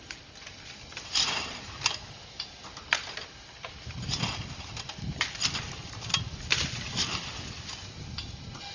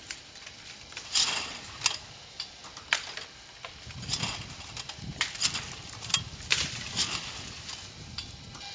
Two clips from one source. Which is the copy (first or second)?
first